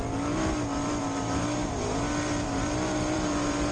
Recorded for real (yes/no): no